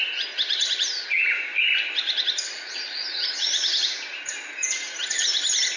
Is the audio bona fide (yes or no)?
yes